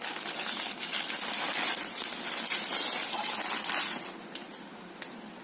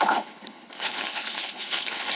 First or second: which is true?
first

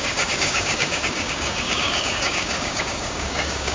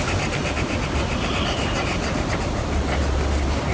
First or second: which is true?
second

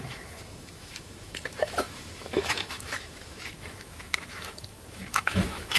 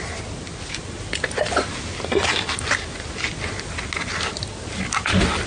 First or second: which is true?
second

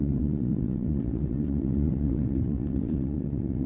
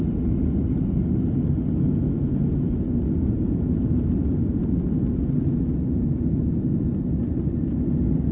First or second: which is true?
second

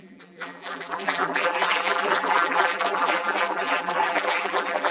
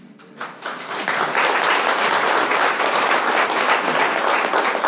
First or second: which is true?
second